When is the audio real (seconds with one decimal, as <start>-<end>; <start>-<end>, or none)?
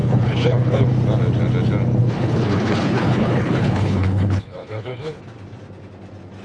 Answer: 0.9-2.0; 5.2-6.4